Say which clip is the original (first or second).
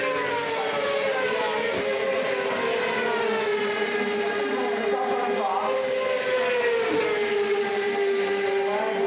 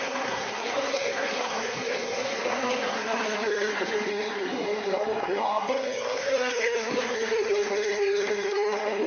first